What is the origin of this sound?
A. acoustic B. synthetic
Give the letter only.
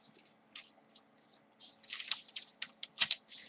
A